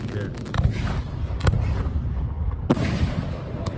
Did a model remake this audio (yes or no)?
no